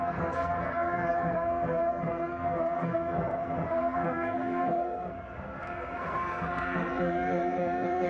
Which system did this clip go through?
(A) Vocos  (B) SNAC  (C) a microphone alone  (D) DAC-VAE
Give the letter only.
B